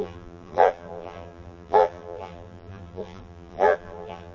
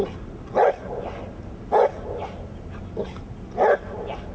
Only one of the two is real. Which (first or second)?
second